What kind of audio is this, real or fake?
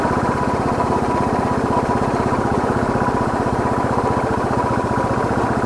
fake